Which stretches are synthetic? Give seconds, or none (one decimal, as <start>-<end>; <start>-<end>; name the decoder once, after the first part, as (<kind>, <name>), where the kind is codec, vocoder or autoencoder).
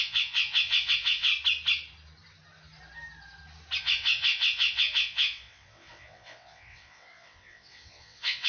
0.0-1.3 (vocoder, WaveNeXt); 3.8-8.5